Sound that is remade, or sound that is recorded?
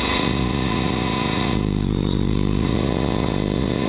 remade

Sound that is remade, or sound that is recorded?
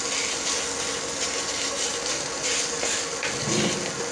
recorded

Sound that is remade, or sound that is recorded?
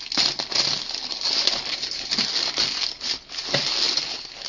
recorded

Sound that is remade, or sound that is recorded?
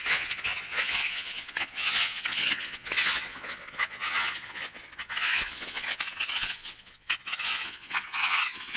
remade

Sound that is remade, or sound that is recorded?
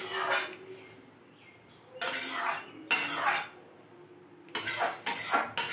recorded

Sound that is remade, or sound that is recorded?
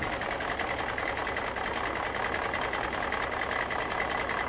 recorded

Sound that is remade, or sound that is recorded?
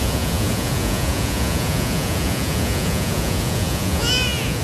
remade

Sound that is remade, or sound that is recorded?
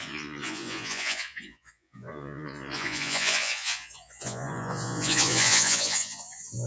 remade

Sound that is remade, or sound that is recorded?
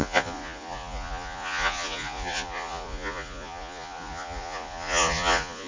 remade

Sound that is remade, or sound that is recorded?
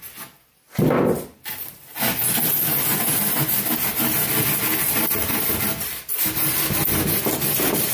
recorded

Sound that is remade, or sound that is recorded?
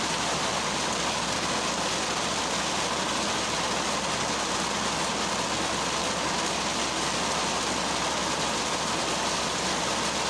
recorded